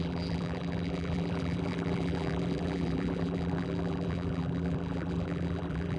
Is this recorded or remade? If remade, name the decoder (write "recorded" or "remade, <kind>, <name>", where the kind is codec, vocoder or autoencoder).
remade, vocoder, BigVGAN v2